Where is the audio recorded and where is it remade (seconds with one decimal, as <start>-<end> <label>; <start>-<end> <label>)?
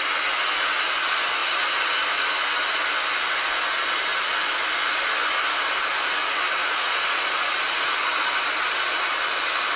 0.0-6.6 recorded; 6.6-7.6 remade; 7.6-9.8 recorded